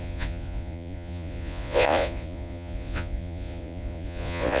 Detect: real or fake fake